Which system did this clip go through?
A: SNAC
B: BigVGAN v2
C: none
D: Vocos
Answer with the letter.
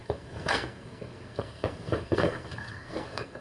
A